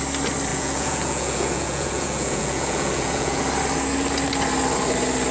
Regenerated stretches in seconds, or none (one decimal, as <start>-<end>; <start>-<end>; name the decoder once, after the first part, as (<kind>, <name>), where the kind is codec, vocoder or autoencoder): 0.5-3.4 (vocoder, Vocos)